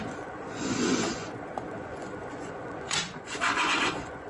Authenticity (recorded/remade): remade